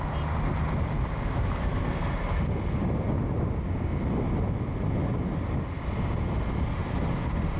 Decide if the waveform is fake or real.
real